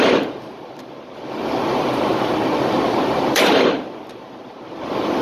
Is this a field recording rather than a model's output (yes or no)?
no